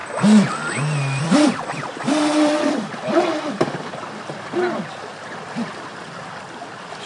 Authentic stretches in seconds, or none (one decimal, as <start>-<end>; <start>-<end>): 0.0-1.2

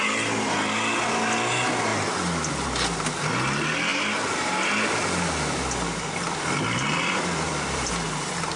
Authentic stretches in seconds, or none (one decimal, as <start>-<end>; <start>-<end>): 0.0-3.9; 7.9-8.6

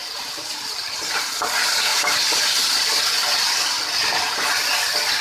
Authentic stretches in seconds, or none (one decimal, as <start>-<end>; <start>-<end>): 1.2-1.9; 3.0-5.2

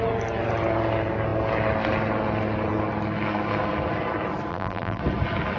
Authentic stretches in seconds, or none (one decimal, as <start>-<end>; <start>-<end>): 0.0-4.5; 5.0-5.6

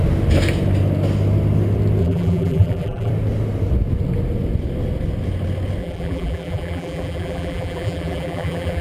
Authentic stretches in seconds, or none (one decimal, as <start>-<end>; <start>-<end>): 0.0-2.0; 3.1-5.8

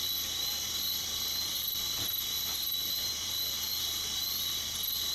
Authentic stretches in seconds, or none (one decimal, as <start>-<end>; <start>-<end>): 0.0-0.5; 2.9-5.1